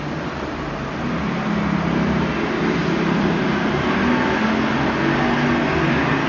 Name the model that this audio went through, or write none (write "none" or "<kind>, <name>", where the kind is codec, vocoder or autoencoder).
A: none